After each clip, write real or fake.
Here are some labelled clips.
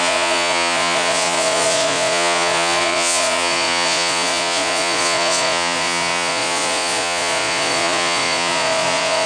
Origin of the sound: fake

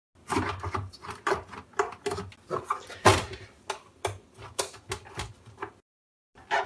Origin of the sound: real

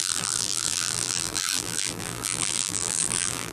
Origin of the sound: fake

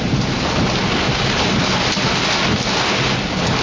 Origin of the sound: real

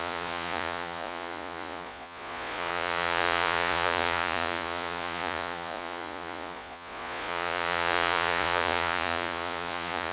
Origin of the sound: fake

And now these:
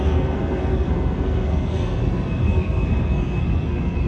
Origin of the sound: fake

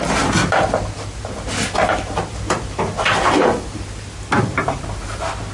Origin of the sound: real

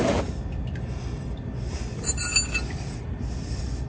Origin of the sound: real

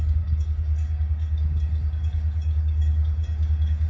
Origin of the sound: fake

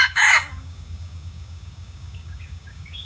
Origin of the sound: fake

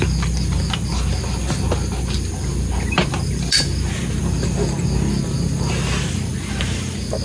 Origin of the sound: real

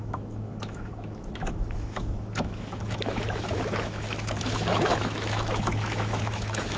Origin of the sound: fake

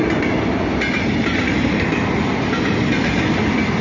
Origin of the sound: real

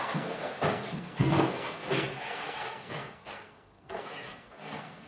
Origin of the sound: fake